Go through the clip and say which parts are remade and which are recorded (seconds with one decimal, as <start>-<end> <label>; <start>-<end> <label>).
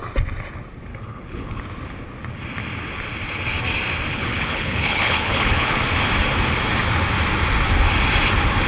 0.0-0.9 recorded; 0.9-1.6 remade; 1.6-4.1 recorded; 4.1-5.8 remade; 5.8-8.7 recorded